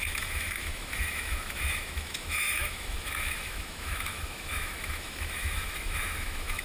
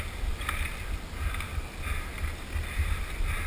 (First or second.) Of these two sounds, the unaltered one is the second